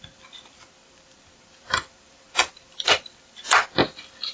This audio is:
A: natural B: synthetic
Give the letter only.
B